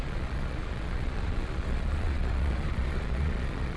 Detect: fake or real fake